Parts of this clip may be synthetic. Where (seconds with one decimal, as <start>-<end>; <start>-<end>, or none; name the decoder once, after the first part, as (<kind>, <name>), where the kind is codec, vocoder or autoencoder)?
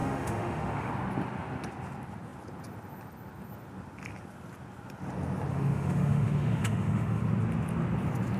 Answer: 0.0-0.9 (autoencoder, DAC-VAE); 5.5-7.2